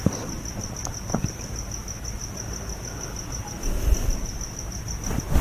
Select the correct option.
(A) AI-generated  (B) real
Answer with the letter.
B